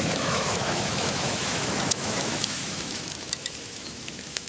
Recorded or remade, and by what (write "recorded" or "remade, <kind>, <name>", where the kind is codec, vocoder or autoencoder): remade, autoencoder, DAC-VAE